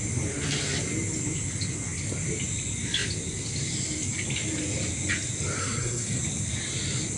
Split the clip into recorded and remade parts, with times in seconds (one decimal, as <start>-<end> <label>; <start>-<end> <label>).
0.0-5.6 recorded; 5.6-6.2 remade; 6.2-7.2 recorded